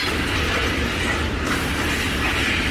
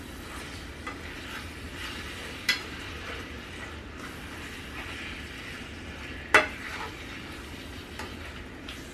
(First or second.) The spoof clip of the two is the first